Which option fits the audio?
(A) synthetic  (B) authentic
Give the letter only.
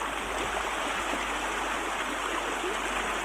B